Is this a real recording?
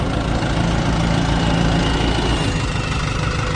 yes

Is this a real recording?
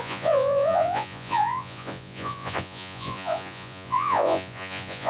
no